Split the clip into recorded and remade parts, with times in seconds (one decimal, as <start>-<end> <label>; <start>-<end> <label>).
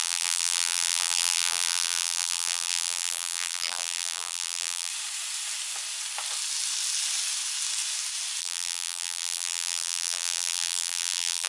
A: 0.0-4.9 remade; 4.9-8.4 recorded; 8.4-11.5 remade